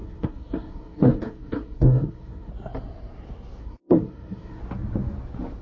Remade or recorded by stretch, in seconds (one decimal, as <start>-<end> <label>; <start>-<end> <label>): 0.0-2.5 remade; 2.5-3.6 recorded; 3.6-4.6 remade; 4.6-5.6 recorded